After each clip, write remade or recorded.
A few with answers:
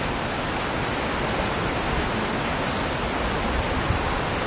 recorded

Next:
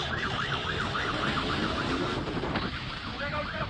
recorded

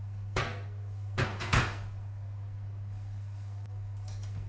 remade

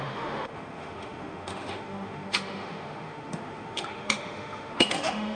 remade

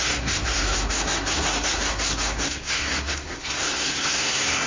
remade